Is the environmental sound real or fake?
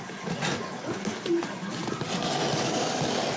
real